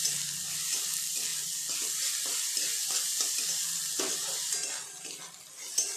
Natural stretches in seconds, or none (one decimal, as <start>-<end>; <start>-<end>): 0.0-6.0